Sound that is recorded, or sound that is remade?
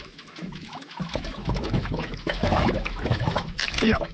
remade